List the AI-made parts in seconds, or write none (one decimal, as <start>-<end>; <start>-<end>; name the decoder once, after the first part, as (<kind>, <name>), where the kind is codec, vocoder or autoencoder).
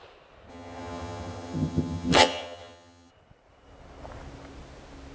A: 0.5-3.1 (vocoder, HiFi-GAN)